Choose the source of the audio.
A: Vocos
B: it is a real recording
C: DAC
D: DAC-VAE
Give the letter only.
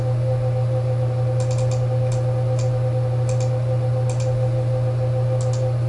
B